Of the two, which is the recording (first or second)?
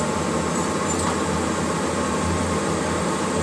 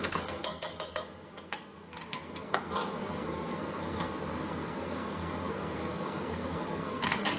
first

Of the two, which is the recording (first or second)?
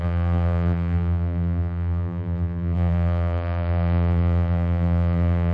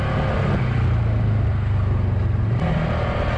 second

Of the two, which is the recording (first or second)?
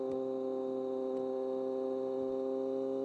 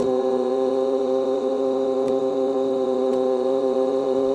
first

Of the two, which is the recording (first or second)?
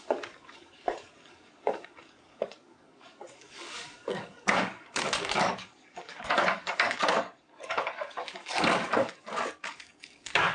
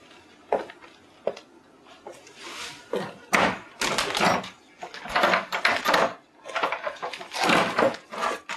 second